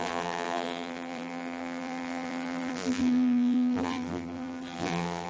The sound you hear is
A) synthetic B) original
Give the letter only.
A